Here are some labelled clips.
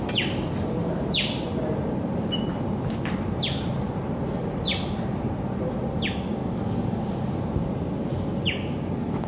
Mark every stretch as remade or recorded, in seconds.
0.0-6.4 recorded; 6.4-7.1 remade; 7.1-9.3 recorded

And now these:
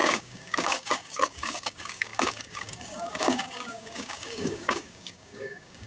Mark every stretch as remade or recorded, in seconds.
0.0-5.9 remade